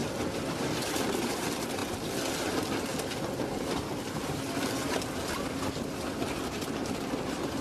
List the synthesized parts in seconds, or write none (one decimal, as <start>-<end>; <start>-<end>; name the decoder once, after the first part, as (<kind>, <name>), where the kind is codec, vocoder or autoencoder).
0.0-1.3 (vocoder, BigVGAN v2); 2.9-5.4